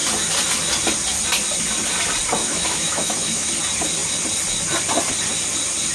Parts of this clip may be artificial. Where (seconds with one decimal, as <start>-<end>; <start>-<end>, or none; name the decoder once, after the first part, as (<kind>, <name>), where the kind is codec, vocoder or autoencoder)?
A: 2.4-3.5 (autoencoder, DAC-VAE)